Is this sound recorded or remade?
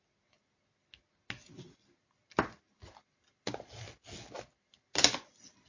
recorded